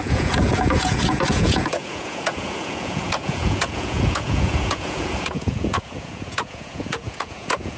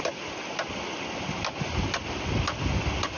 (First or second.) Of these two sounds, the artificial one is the first